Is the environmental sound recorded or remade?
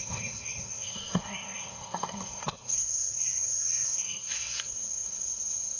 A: remade